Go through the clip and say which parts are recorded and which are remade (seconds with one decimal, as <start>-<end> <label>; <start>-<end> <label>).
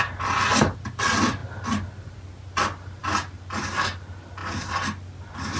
0.0-5.6 recorded